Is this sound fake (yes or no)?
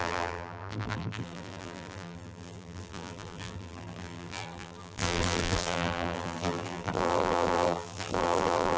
yes